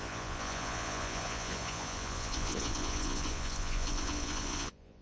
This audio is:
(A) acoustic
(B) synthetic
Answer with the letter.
B